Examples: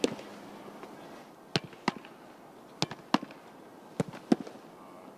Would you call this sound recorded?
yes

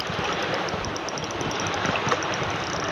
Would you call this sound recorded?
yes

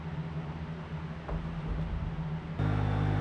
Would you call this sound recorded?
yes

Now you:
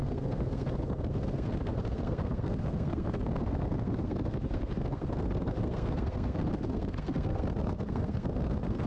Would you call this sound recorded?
no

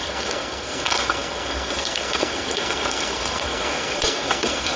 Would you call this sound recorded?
no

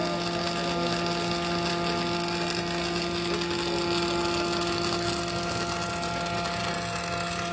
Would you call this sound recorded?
yes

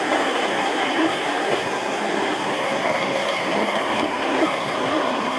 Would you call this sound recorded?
no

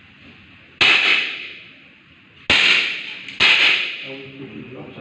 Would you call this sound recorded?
yes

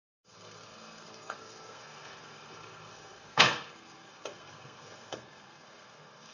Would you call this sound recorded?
no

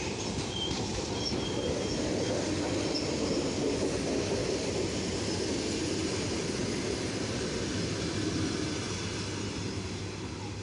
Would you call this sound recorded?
yes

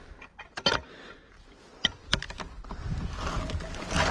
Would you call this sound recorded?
yes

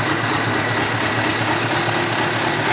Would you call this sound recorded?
yes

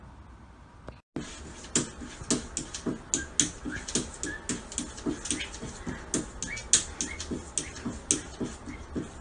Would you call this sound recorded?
yes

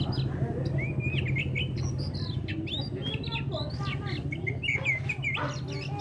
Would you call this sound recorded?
yes